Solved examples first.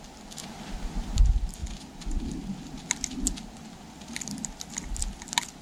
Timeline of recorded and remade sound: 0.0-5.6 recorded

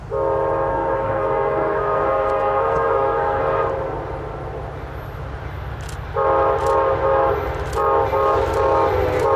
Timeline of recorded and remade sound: 0.0-0.7 recorded; 0.7-3.4 remade; 3.4-9.4 recorded